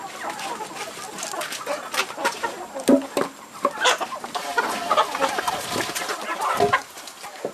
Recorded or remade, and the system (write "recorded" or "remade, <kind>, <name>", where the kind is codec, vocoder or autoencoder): recorded